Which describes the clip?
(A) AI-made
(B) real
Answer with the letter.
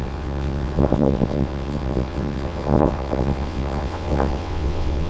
A